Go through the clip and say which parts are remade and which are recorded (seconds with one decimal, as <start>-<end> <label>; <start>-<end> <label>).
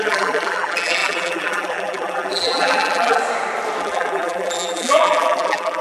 0.0-3.2 remade; 3.2-3.8 recorded; 3.8-5.8 remade